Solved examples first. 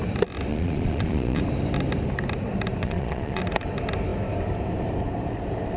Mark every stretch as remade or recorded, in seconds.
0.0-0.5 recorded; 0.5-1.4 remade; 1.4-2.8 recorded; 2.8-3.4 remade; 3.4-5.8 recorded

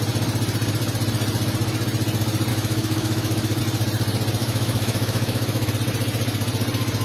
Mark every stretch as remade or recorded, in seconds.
0.0-2.5 recorded; 2.5-3.6 remade; 3.6-4.4 recorded; 4.4-5.7 remade; 5.7-7.0 recorded